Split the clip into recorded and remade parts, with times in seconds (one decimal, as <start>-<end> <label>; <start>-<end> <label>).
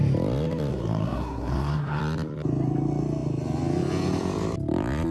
0.0-0.7 recorded; 0.7-2.0 remade; 2.0-5.1 recorded